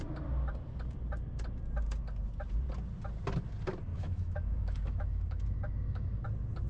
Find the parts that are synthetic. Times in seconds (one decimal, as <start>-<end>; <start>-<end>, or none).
3.9-6.2

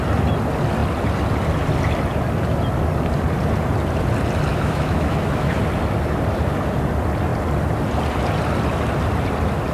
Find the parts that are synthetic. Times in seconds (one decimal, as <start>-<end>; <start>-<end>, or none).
4.5-5.6

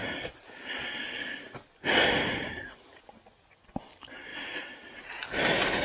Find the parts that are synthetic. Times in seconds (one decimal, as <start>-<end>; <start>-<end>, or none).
none

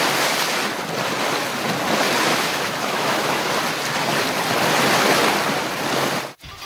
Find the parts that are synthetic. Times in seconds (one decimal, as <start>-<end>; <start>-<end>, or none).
2.3-3.4

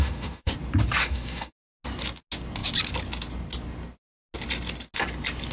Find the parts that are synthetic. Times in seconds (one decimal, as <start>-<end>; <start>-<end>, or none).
0.0-0.5; 1.0-1.5

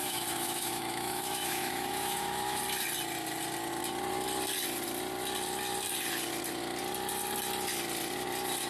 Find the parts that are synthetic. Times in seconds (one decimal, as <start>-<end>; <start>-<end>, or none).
0.0-2.6

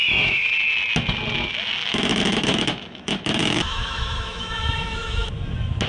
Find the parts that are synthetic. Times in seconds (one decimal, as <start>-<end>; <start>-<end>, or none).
0.0-0.5; 1.8-5.3

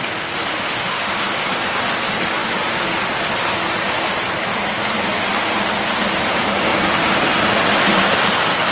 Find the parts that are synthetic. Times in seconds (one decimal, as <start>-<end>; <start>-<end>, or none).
0.5-1.1